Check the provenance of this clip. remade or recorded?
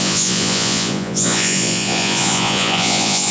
remade